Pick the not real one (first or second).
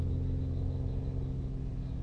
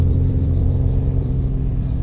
second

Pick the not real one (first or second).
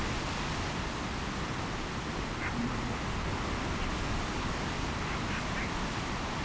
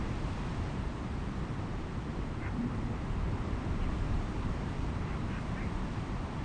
second